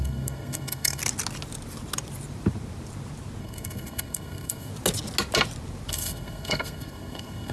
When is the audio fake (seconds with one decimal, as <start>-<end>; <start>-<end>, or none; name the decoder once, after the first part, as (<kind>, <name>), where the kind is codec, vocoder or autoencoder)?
0.0-1.0 (codec, SNAC); 3.4-4.7; 5.9-7.5